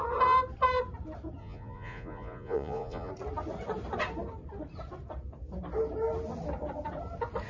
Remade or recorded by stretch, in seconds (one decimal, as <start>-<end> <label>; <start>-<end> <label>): 0.0-1.4 recorded; 1.4-3.1 remade; 3.1-7.5 recorded